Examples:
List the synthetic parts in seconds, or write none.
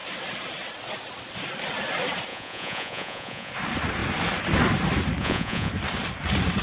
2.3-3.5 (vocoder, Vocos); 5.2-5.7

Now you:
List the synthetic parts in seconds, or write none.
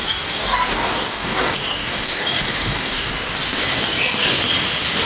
0.0-3.1 (codec, DAC)